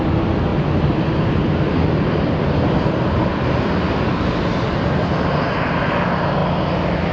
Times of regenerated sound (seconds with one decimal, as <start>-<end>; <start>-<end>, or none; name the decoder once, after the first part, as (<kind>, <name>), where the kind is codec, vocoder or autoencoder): none